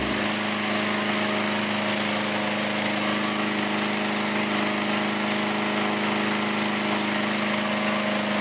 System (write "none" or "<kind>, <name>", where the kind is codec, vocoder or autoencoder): none